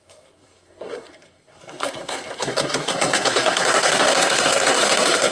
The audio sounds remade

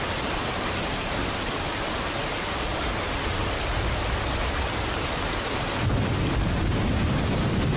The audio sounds recorded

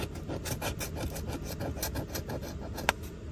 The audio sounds recorded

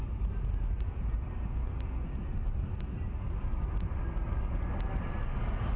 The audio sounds recorded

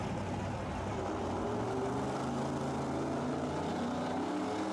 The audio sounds recorded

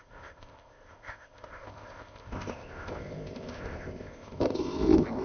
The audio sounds remade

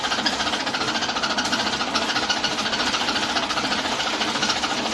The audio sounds recorded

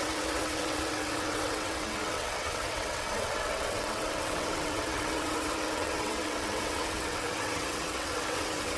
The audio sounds remade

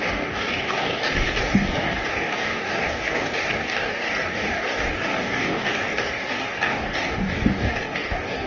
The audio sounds remade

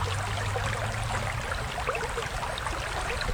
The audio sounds recorded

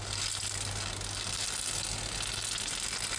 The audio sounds recorded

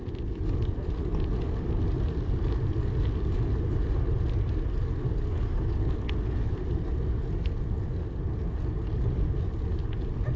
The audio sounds recorded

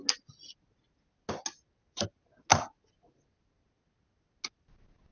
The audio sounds recorded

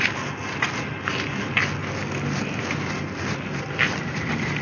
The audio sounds recorded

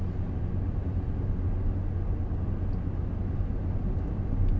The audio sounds recorded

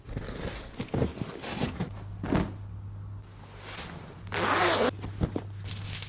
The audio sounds recorded